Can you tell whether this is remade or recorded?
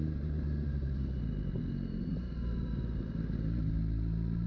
recorded